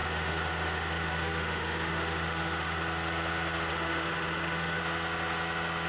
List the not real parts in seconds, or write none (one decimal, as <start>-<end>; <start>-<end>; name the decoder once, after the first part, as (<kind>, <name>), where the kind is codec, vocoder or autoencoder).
0.0-2.8 (autoencoder, DAC-VAE); 3.7-4.8